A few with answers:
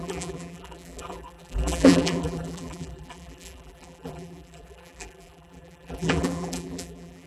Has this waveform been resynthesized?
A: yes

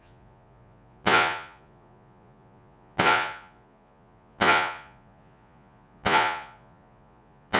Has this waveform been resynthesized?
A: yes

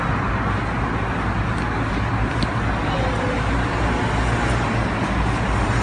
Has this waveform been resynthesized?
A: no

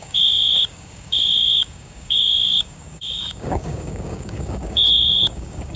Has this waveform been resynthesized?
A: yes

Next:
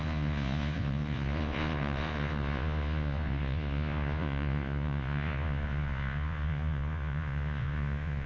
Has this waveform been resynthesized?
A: yes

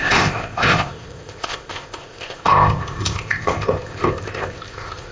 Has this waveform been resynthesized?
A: yes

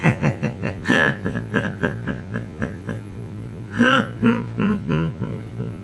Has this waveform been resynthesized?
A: yes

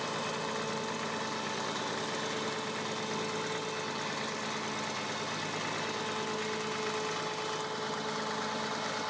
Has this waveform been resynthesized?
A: no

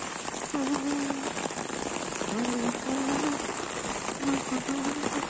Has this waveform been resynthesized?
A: no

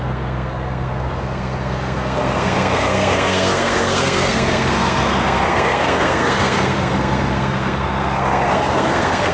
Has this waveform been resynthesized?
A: yes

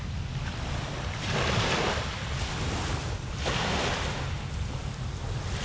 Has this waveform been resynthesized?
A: no